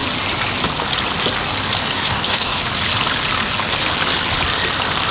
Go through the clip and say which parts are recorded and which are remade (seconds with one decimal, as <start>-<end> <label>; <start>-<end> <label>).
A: 0.0-1.8 recorded; 1.8-2.6 remade; 2.6-5.1 recorded